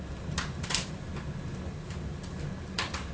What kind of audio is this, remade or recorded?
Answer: recorded